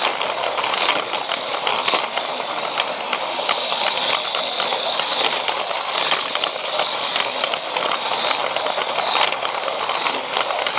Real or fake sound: real